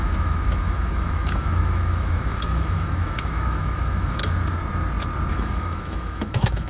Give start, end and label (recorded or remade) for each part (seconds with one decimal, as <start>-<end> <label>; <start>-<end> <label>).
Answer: 0.0-4.2 remade; 4.2-5.3 recorded; 5.3-6.7 remade